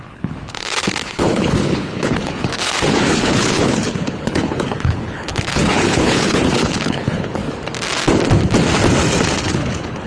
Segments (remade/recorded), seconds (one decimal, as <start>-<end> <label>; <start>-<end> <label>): 0.0-7.4 remade; 7.4-9.4 recorded; 9.4-10.1 remade

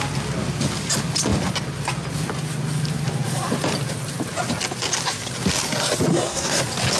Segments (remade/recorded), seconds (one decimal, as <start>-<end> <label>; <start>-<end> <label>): 0.0-6.1 recorded; 6.1-6.6 remade; 6.6-7.0 recorded